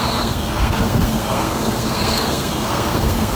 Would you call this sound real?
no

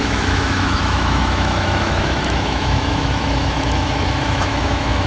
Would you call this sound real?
no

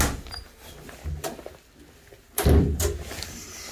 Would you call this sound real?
yes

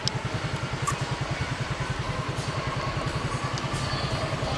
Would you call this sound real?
yes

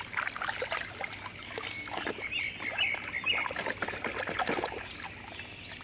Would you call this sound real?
yes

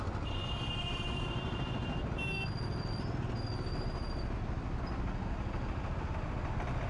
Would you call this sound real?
yes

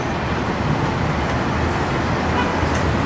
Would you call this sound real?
yes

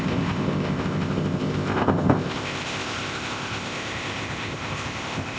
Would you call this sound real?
no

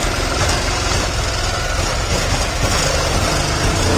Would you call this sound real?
yes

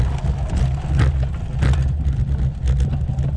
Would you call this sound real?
yes